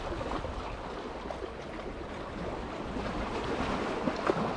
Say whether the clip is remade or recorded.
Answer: recorded